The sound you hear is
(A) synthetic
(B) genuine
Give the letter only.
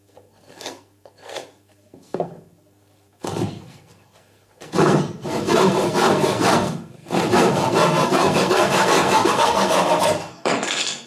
A